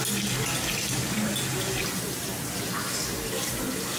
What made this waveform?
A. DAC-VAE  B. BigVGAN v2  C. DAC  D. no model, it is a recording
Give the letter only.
D